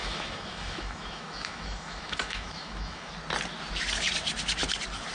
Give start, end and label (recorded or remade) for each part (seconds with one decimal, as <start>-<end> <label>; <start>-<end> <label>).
0.0-3.1 remade; 3.1-5.1 recorded